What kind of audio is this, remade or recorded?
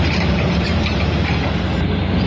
remade